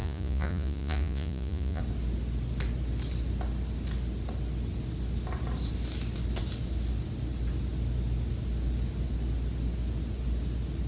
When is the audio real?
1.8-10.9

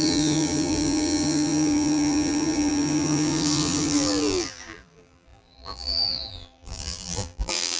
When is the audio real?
none

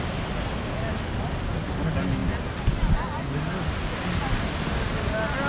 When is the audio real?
0.0-5.5

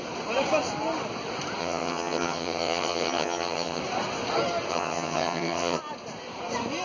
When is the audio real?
0.0-1.6; 3.8-4.7; 5.8-6.8

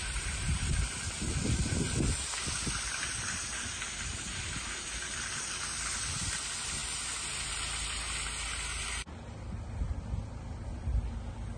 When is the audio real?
0.0-11.6

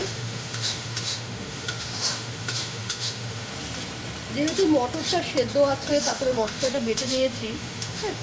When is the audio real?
3.5-5.9

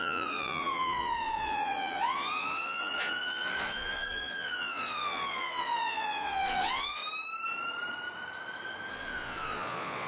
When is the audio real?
7.0-8.9